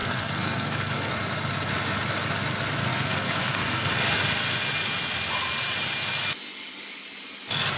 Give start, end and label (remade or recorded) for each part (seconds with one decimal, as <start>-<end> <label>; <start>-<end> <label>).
0.0-1.1 remade; 1.1-2.9 recorded; 2.9-3.9 remade; 3.9-7.8 recorded